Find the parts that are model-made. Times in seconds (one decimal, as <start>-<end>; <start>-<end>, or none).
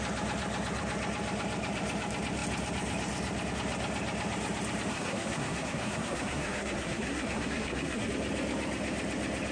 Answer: 4.9-8.1